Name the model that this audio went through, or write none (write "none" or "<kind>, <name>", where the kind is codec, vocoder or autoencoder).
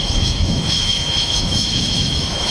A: autoencoder, DAC-VAE